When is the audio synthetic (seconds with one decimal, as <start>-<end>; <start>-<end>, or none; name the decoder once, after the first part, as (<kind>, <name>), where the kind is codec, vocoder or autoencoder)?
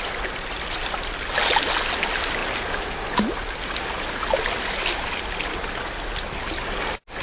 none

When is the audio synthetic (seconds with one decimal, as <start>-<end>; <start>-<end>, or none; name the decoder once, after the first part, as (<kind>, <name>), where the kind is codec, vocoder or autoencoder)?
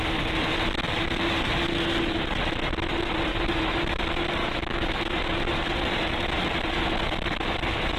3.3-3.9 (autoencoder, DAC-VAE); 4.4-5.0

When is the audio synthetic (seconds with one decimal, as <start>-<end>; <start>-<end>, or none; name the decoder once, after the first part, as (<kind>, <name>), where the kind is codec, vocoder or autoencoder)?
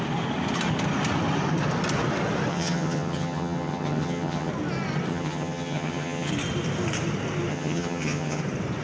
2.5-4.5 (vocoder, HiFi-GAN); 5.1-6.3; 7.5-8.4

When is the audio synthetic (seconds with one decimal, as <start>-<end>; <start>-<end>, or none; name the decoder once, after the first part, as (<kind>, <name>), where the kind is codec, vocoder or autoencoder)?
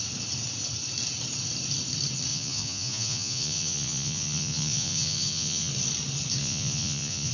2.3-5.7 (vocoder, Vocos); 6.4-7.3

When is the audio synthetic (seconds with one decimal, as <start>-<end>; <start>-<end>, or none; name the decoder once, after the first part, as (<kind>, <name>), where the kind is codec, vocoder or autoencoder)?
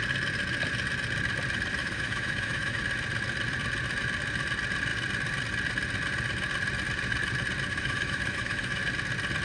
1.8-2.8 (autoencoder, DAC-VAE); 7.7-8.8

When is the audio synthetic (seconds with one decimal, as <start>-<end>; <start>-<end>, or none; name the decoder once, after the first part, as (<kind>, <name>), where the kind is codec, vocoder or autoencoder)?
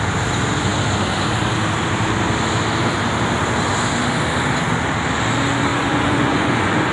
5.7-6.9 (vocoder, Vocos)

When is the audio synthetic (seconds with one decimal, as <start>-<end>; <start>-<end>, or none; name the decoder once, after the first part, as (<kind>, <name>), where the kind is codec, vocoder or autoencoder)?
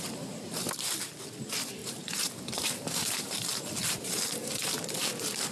1.8-5.1 (vocoder, BigVGAN v2)